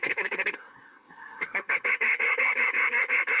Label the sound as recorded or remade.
remade